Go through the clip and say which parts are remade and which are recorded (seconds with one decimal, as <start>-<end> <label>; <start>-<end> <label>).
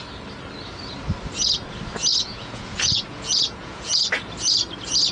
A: 0.0-2.1 recorded; 2.1-4.1 remade; 4.1-5.1 recorded